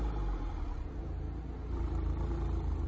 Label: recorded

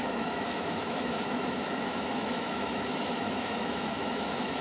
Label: remade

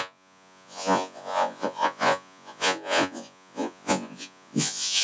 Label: remade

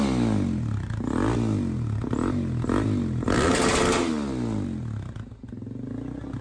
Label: recorded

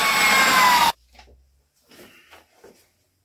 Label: recorded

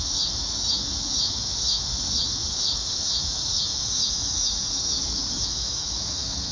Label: remade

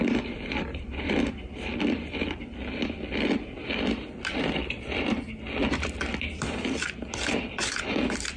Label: remade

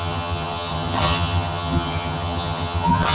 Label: remade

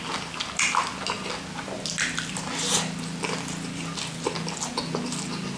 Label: recorded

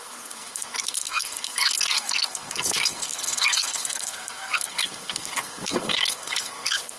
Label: remade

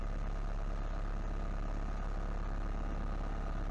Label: recorded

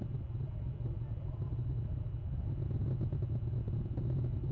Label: recorded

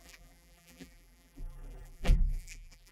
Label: remade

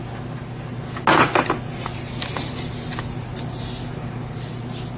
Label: recorded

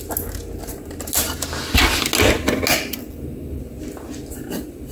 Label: recorded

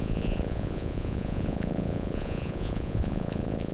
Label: remade